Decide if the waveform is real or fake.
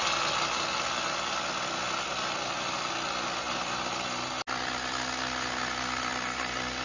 real